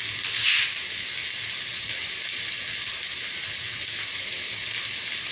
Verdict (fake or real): real